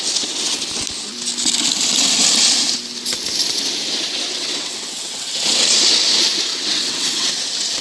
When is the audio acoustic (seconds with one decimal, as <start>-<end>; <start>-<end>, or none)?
0.0-4.3; 5.6-6.5; 7.3-7.8